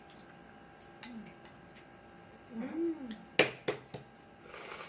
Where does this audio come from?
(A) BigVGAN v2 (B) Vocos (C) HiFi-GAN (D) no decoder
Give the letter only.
D